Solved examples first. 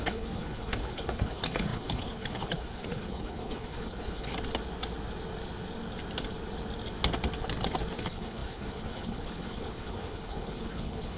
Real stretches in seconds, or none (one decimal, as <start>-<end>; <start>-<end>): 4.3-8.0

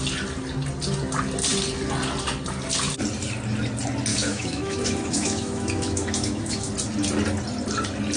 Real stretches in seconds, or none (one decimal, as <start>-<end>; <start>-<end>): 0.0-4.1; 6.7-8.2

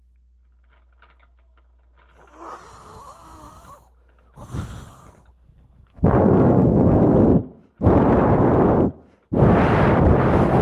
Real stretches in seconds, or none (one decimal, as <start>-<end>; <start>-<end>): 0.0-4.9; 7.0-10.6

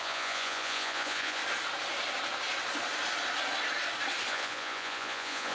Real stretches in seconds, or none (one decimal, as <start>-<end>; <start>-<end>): 1.4-4.3